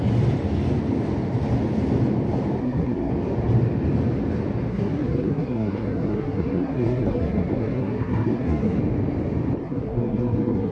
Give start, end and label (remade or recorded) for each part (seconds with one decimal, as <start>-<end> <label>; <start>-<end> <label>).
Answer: 0.0-2.6 recorded; 2.6-3.1 remade; 3.1-4.7 recorded; 4.7-8.8 remade; 8.8-9.6 recorded; 9.6-10.7 remade

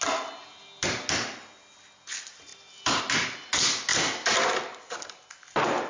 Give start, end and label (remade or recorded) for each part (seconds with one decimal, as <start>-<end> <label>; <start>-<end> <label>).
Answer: 0.0-5.9 recorded